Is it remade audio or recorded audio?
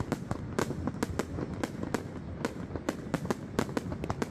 recorded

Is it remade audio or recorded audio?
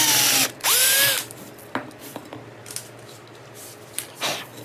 recorded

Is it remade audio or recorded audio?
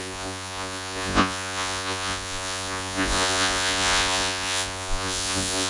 remade